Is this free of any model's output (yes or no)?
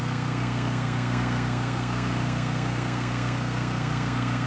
no